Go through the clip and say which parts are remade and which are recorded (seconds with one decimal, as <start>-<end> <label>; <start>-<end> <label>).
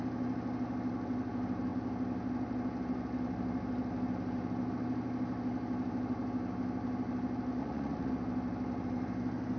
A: 0.0-7.6 recorded; 7.6-8.1 remade; 8.1-9.6 recorded